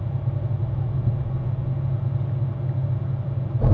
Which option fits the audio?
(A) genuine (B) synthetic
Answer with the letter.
A